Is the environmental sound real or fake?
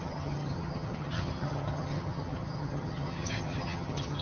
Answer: fake